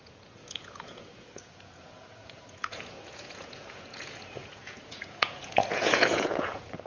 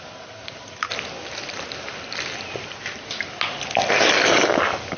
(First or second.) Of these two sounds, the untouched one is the second